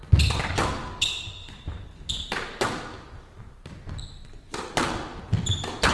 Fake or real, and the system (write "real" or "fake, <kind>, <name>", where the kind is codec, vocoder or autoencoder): real